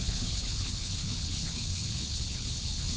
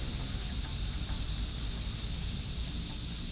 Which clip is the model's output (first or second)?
first